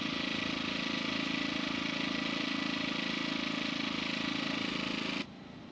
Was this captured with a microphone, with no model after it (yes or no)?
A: yes